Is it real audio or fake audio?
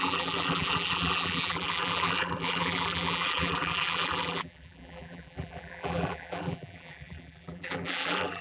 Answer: fake